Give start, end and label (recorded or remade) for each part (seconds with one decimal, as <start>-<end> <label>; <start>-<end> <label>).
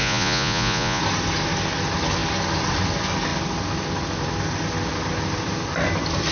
0.0-1.0 remade; 1.0-6.3 recorded